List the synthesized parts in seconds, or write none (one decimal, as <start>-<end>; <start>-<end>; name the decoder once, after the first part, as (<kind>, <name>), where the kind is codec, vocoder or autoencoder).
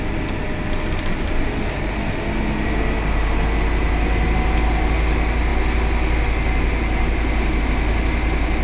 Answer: none